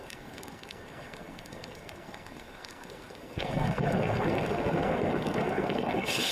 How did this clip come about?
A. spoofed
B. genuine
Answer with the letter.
A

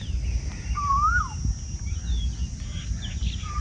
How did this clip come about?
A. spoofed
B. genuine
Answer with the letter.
B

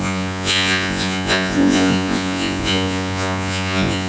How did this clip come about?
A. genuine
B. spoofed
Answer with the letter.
B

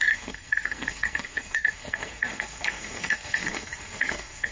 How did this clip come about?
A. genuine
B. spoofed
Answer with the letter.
B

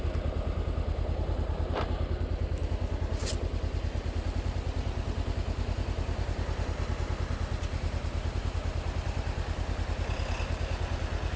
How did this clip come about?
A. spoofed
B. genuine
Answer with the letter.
B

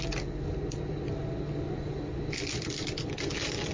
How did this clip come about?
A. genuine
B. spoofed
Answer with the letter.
A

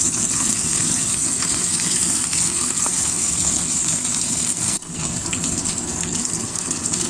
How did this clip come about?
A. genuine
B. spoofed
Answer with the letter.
B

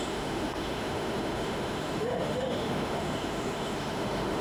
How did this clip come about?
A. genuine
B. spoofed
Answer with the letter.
B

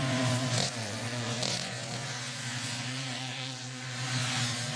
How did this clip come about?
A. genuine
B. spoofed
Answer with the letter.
B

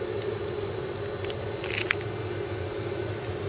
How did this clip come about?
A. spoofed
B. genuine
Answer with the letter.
B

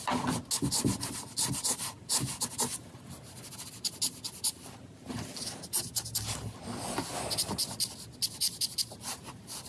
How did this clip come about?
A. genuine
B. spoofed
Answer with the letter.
A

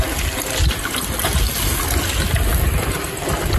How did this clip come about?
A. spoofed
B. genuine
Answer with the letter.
B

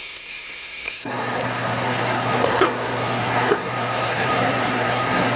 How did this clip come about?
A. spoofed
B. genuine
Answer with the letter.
A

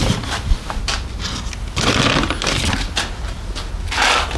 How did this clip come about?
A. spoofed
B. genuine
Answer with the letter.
B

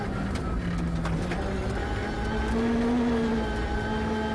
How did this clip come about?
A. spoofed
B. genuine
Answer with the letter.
B